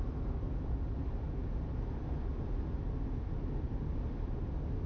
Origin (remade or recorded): recorded